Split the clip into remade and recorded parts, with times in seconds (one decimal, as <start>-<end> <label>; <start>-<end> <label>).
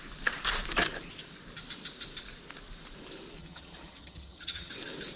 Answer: 0.0-3.4 recorded; 3.4-4.7 remade; 4.7-5.2 recorded